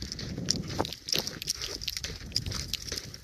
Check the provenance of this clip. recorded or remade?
recorded